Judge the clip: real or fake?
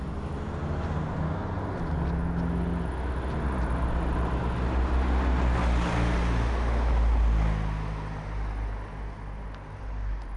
real